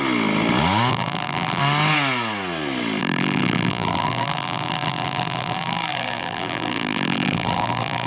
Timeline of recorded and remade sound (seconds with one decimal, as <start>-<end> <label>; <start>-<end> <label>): 0.0-0.9 recorded; 0.9-1.6 remade; 1.6-3.0 recorded; 3.0-8.1 remade